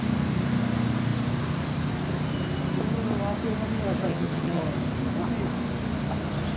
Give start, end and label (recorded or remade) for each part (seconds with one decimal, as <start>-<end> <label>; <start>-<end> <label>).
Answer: 0.0-4.1 recorded; 4.1-4.6 remade; 4.6-6.6 recorded